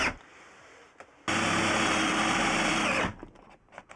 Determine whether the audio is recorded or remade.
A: recorded